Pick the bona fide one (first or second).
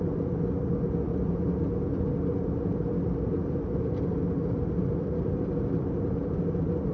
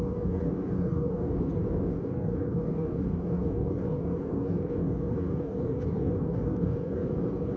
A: first